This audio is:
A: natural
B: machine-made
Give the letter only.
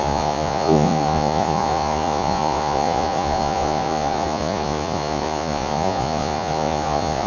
B